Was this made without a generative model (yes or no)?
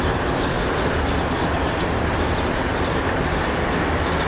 yes